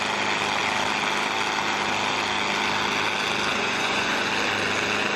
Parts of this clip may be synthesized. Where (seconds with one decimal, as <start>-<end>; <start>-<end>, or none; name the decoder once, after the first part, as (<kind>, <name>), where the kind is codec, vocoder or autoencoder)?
3.5-4.3 (vocoder, Vocos)